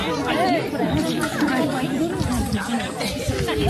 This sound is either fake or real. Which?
real